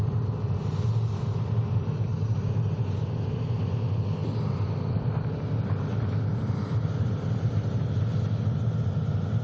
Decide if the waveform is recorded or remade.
recorded